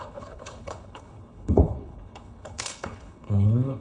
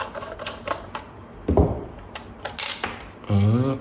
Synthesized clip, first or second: first